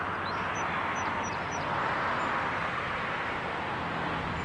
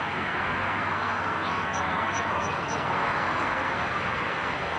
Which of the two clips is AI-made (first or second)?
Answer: second